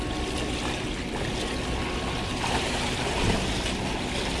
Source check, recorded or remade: recorded